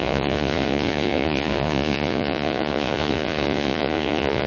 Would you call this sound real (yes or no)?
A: no